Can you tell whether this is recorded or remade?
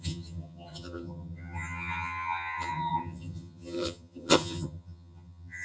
remade